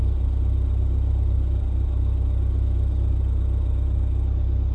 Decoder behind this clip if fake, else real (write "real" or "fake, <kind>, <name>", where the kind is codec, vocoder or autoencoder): real